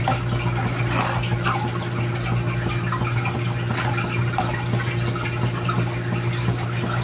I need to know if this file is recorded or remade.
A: recorded